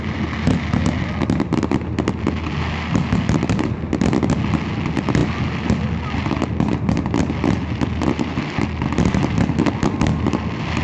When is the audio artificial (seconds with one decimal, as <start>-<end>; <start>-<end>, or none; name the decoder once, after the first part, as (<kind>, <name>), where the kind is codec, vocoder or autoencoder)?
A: none